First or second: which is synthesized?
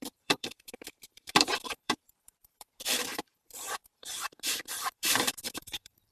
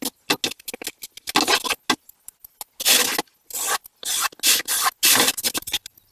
first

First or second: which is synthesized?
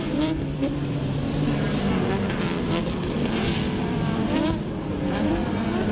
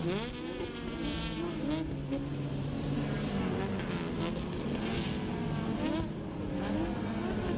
first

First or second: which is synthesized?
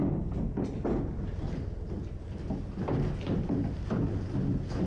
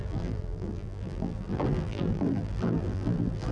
second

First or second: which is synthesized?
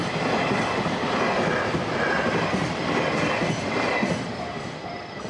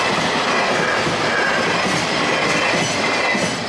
first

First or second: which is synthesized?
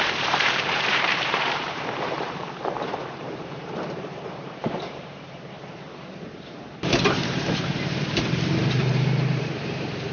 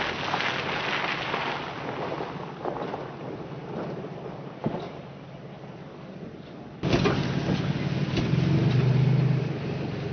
first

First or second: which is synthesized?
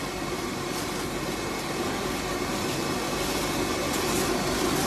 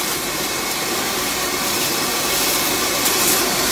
second